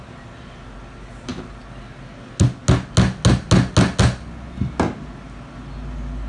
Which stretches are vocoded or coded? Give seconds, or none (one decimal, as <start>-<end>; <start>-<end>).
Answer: none